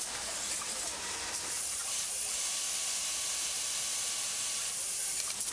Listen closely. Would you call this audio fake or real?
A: fake